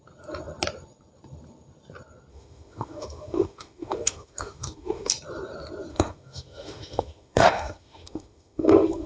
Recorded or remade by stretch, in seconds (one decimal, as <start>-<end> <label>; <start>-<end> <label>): 0.0-2.3 recorded; 2.3-5.1 remade; 5.1-5.9 recorded; 5.9-9.1 remade